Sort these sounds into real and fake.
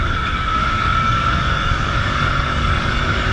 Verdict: fake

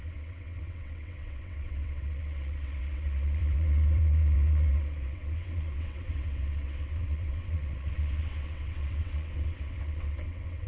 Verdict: fake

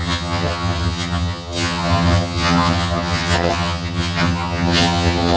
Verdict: fake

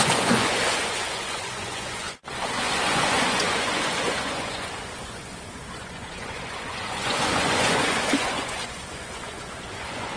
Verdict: fake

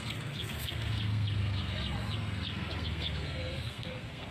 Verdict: fake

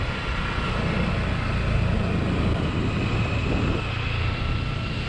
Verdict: real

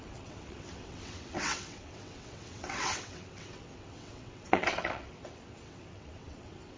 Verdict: fake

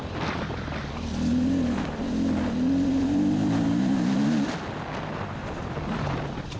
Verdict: real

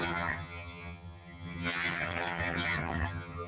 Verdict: fake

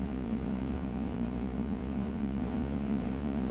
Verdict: fake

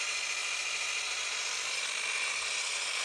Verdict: real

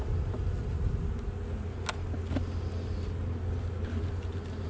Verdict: real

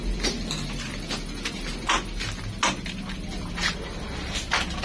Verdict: real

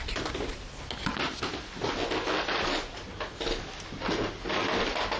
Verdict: real